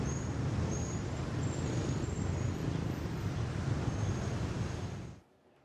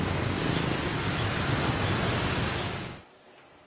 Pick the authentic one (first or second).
second